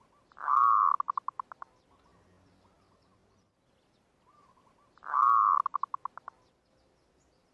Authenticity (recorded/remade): recorded